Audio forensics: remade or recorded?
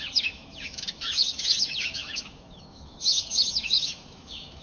remade